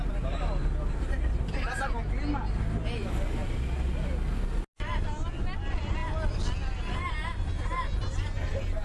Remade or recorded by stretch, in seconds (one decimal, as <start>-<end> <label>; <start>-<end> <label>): 0.0-0.6 recorded; 0.6-1.7 remade; 1.7-3.4 recorded; 3.4-3.9 remade; 3.9-8.8 recorded